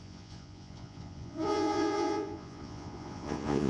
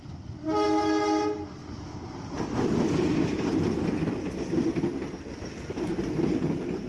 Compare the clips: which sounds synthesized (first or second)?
first